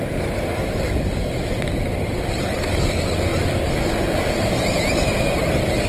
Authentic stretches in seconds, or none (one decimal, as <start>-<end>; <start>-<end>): 3.3-5.9